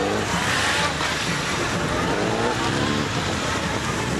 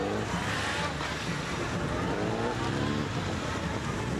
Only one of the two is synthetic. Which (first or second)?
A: first